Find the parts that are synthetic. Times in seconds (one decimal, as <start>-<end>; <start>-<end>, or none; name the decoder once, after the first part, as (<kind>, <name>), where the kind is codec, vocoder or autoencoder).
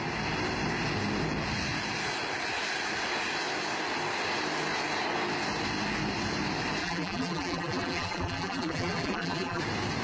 6.8-9.6 (vocoder, BigVGAN v2)